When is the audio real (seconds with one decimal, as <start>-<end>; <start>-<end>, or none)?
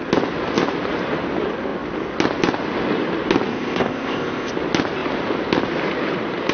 0.0-3.5; 4.5-6.5